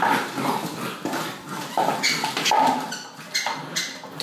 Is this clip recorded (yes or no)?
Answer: yes